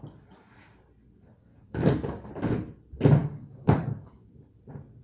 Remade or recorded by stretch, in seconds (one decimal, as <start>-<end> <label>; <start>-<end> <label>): 0.0-1.5 recorded; 1.5-2.3 remade; 2.3-3.2 recorded; 3.2-4.3 remade; 4.3-5.0 recorded